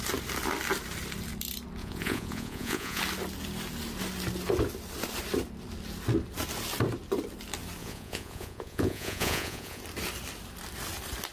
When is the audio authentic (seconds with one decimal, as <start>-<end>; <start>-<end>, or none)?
0.0-1.8; 3.0-7.8; 9.8-11.3